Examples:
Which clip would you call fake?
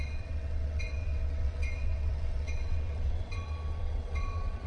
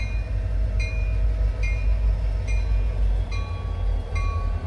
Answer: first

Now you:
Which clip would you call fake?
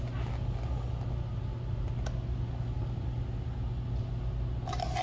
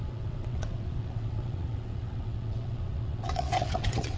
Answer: second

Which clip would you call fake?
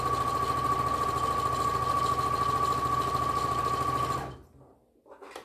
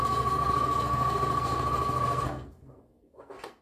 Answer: second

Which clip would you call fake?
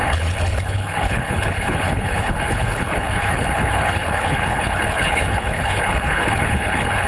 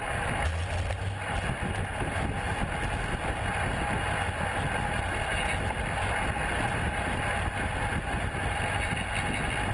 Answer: first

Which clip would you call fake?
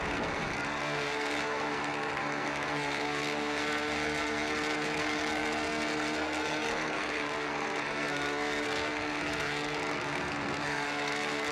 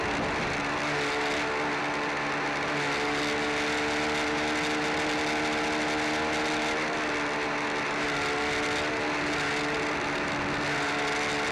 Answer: first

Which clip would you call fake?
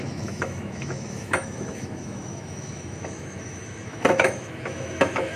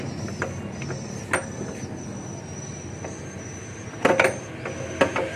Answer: first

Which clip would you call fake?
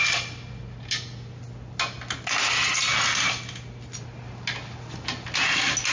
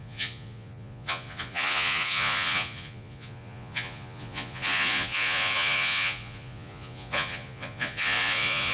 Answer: second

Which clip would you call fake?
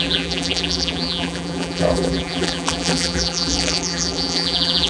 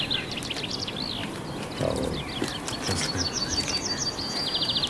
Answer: first